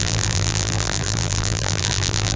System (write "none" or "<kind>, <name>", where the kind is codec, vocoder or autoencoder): vocoder, BigVGAN v2